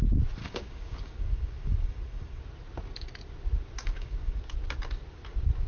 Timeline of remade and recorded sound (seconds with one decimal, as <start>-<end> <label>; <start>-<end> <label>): 0.0-0.4 recorded; 0.4-2.4 remade; 2.4-3.8 recorded; 3.8-4.4 remade; 4.4-5.7 recorded